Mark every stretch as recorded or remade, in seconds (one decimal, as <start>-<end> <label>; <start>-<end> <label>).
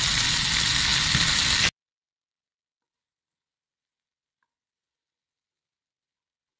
0.0-6.6 recorded